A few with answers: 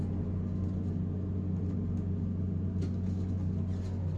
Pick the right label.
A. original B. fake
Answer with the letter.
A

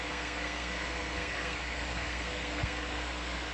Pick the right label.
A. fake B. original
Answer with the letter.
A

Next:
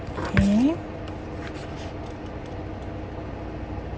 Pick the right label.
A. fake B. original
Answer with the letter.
B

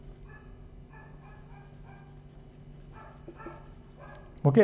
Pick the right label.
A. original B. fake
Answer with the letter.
A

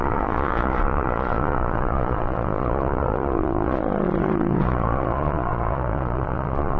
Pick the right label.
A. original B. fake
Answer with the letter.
B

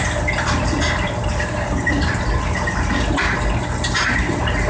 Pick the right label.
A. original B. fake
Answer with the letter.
A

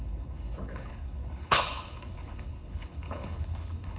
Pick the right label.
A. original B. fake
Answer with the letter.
B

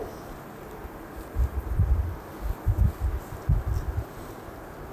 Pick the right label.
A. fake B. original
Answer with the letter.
B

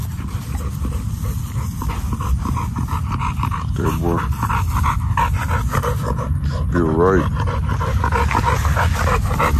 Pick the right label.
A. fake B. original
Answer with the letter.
B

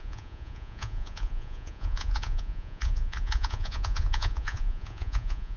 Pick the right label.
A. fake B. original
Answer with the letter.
A